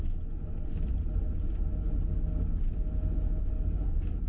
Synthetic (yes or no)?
no